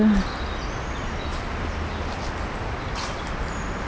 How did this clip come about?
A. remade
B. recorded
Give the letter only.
B